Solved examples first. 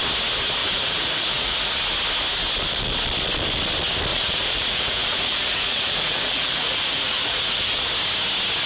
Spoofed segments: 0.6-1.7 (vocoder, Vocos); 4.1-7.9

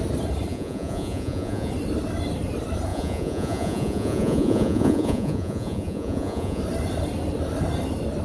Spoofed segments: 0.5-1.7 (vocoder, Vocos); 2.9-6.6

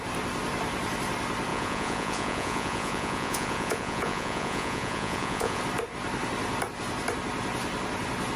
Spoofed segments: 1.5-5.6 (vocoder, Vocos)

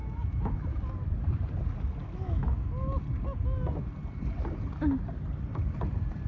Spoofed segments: 0.0-0.8 (autoencoder, DAC-VAE); 2.0-2.7

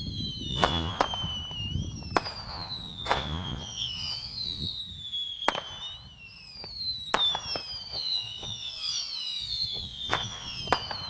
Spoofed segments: 0.5-1.0 (vocoder, Vocos); 2.5-4.8; 7.9-10.6

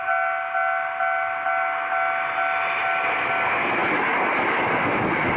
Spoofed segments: none